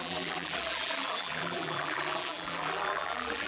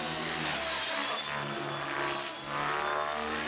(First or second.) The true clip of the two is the second